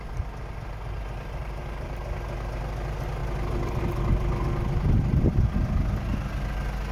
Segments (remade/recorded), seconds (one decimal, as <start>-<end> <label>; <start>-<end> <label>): 0.0-1.4 recorded; 1.4-2.0 remade; 2.0-6.9 recorded